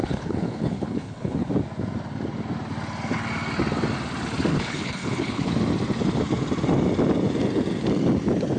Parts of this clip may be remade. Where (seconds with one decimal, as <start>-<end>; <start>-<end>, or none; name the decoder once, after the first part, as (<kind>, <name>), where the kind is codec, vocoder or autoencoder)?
0.0-1.5 (codec, HILCodec); 4.5-5.5

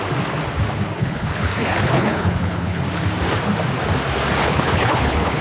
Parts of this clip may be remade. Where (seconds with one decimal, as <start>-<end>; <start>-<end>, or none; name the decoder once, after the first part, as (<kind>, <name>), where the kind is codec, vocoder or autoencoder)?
1.0-2.8 (codec, HILCodec); 4.4-5.4

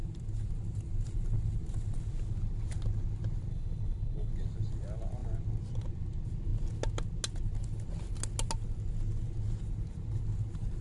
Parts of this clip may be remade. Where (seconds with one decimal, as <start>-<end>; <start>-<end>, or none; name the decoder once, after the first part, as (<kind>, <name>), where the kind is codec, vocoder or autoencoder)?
3.5-4.3 (codec, HILCodec)

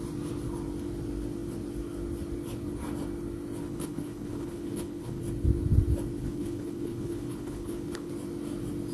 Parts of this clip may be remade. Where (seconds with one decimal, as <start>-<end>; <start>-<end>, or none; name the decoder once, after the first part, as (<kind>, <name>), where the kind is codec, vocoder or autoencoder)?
3.6-5.2 (codec, HILCodec); 6.2-8.1

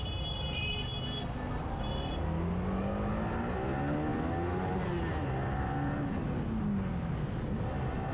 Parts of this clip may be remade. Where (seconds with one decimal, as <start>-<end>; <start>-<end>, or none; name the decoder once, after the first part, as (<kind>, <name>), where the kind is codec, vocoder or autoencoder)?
none

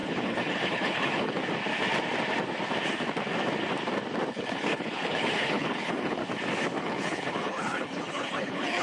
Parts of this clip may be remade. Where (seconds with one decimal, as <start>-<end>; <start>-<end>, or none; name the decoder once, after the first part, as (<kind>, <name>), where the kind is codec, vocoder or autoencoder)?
0.0-1.4 (codec, HILCodec); 4.3-6.2; 6.8-8.8

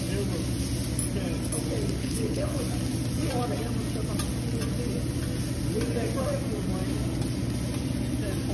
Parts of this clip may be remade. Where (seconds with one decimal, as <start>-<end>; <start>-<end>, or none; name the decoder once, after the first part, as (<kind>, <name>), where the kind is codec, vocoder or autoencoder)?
2.0-2.6 (codec, HILCodec)